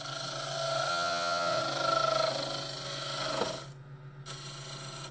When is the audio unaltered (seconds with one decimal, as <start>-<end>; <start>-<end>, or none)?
0.0-0.9; 1.6-5.1